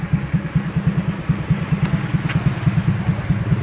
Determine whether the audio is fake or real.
real